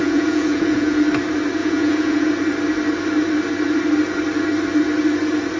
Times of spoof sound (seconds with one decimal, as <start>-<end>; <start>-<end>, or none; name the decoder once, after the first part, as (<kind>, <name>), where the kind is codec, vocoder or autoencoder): 0.0-1.0 (vocoder, Vocos); 1.6-2.3